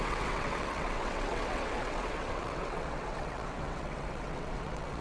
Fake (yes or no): yes